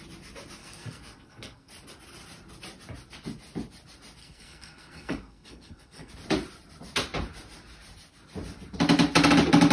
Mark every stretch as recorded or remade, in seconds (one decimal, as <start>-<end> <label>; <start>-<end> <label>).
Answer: 0.0-0.6 recorded; 0.6-1.7 remade; 1.7-4.2 recorded; 4.2-6.1 remade; 6.1-9.7 recorded